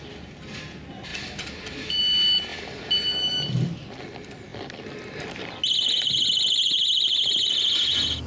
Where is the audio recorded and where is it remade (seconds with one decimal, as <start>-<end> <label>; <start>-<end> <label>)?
0.0-1.1 recorded; 1.1-2.0 remade; 2.0-2.5 recorded; 2.5-3.9 remade; 3.9-8.3 recorded